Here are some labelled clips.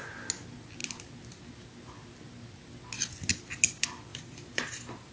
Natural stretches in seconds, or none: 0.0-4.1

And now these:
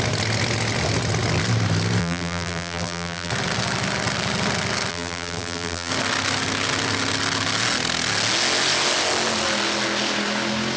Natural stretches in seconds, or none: 0.0-2.0; 3.3-4.9; 5.9-10.8

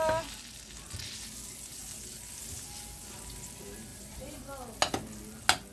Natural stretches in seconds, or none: 0.0-3.9; 4.4-5.7